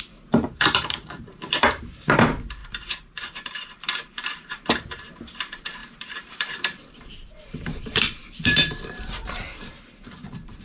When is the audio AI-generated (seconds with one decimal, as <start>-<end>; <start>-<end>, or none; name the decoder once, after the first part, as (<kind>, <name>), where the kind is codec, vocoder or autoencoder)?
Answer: 0.0-10.6 (vocoder, BigVGAN v2)

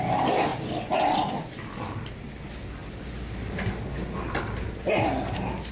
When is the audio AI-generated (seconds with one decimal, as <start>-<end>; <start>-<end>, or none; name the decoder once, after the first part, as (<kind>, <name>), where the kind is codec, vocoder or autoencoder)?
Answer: none

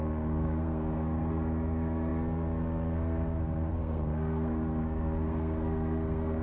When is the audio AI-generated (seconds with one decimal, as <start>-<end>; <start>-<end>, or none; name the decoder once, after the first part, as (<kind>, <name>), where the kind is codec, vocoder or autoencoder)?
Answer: 0.0-6.4 (codec, SNAC)